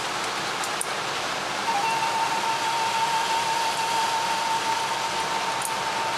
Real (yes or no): yes